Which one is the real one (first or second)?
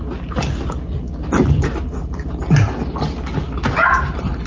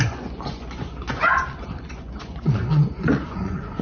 first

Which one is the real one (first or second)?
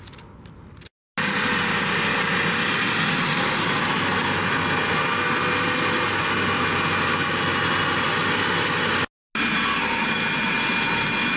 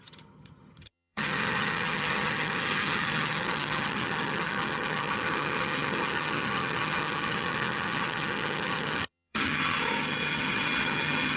first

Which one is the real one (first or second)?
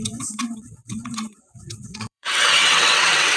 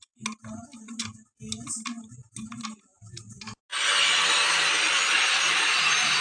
second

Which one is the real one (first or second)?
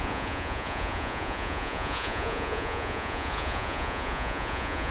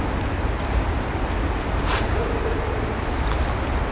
second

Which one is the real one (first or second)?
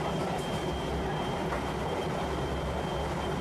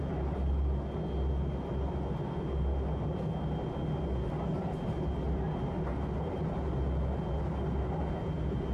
second